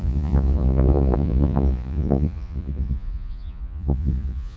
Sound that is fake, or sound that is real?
fake